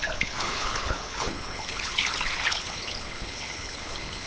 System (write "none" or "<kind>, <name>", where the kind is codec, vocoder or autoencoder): codec, HILCodec